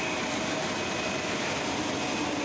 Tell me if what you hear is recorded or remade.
recorded